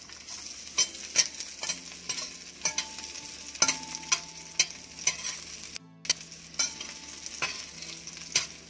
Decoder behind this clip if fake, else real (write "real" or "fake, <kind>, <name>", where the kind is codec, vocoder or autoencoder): real